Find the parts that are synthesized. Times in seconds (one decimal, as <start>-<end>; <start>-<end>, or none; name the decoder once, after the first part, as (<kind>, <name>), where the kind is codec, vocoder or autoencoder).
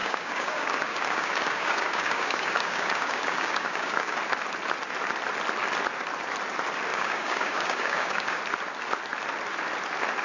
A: 0.0-4.2 (codec, DAC); 6.9-8.4